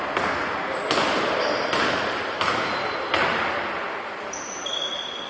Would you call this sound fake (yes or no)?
no